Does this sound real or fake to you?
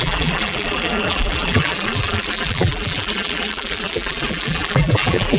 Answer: fake